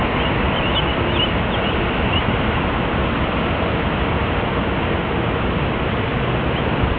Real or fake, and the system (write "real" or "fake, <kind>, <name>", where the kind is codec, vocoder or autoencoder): real